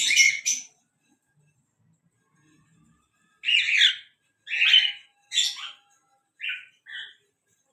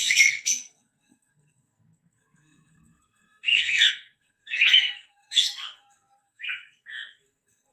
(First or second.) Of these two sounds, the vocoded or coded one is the second